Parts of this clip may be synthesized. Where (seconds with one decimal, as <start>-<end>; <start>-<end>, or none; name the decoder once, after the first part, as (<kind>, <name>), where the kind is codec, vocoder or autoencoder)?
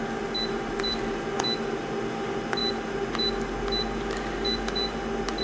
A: none